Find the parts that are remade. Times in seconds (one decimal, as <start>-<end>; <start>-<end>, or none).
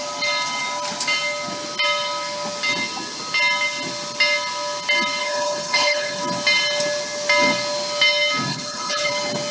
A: 5.2-6.2; 8.5-9.1